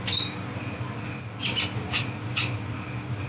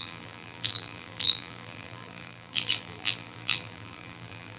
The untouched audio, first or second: first